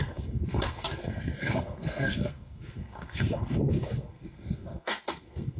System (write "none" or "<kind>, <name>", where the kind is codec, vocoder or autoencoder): codec, SNAC